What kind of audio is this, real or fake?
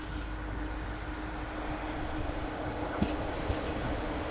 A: real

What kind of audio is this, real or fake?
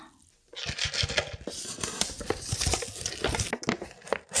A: real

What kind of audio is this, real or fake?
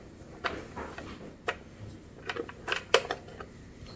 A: real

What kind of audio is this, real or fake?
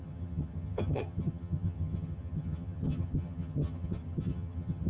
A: fake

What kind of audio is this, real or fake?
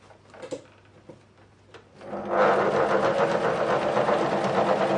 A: real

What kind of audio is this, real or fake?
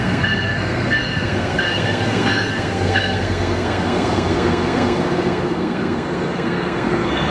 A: fake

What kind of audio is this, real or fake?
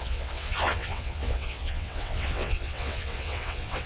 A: fake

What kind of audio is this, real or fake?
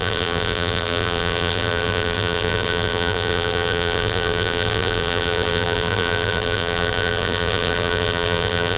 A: fake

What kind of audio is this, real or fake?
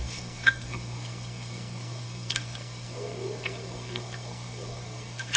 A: fake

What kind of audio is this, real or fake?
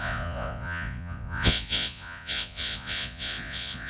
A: fake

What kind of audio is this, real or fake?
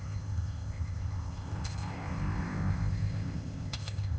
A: fake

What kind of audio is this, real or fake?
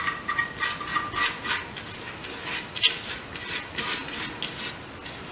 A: real